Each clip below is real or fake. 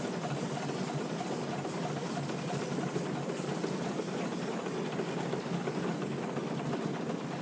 real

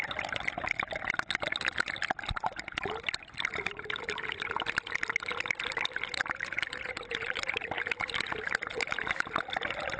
real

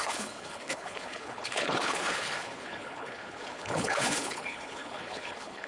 fake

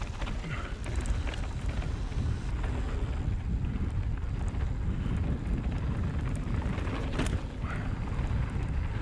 real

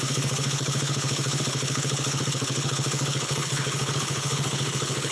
fake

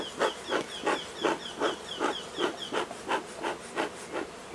real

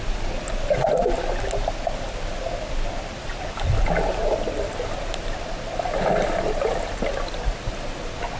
real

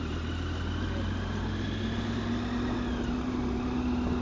real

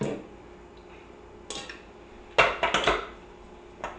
real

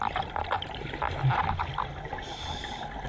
real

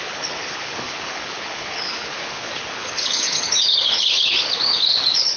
fake